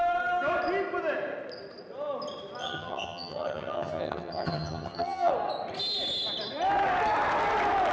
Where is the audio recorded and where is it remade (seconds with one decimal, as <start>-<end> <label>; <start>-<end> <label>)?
0.0-2.6 recorded; 2.6-5.3 remade; 5.3-7.9 recorded